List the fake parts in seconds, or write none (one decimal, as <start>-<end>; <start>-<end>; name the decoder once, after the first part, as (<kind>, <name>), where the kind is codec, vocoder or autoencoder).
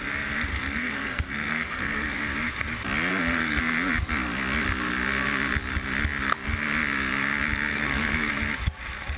0.5-2.2 (codec, SNAC); 3.1-3.6; 7.7-8.3